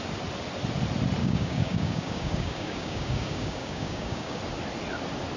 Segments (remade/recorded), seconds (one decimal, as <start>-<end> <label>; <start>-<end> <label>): 0.0-1.2 recorded; 1.2-4.4 remade; 4.4-5.4 recorded